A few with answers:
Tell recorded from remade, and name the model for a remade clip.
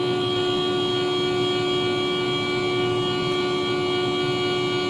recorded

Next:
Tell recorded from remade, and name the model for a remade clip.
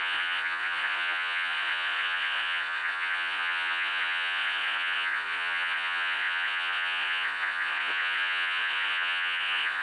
remade, vocoder, Vocos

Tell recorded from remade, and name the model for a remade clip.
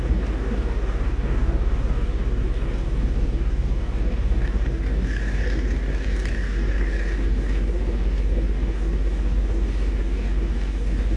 remade, codec, DAC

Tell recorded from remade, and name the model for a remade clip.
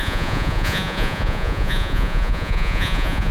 remade, vocoder, Vocos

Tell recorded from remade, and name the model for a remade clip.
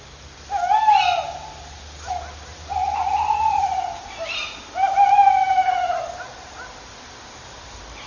recorded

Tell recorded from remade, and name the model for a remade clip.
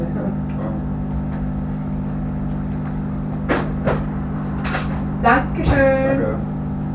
recorded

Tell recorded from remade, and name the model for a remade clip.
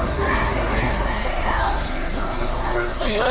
remade, codec, SNAC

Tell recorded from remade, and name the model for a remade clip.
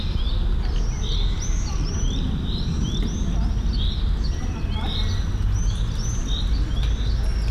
recorded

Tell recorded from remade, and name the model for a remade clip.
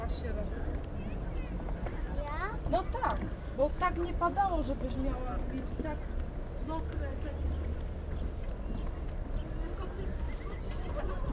recorded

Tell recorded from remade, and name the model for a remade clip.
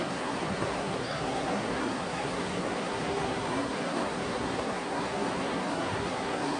remade, codec, SNAC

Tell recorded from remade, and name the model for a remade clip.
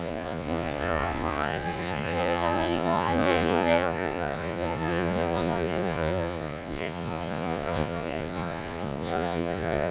remade, vocoder, Vocos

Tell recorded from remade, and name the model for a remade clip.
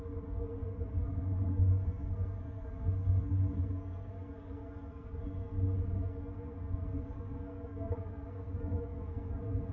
remade, codec, SNAC